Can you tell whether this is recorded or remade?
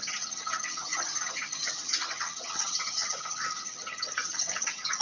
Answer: remade